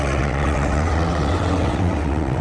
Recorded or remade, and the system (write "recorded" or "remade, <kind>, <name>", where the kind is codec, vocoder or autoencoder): remade, vocoder, WaveNeXt